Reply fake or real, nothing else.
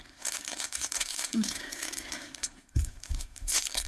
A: fake